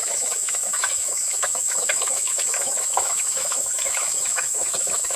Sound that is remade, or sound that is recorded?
remade